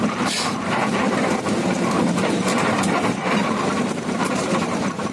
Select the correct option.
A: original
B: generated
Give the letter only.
B